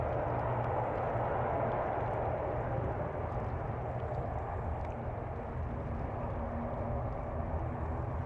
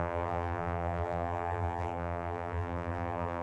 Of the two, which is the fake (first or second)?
second